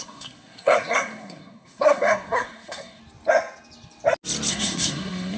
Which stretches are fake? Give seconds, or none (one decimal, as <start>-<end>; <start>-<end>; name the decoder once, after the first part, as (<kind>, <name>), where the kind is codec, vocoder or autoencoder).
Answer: 0.0-3.0 (codec, SNAC); 4.5-5.4